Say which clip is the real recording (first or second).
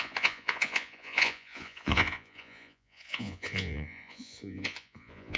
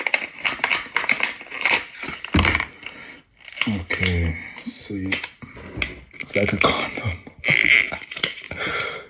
second